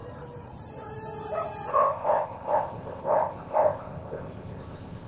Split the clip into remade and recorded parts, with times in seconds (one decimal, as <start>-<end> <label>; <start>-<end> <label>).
0.0-1.7 recorded; 1.7-5.1 remade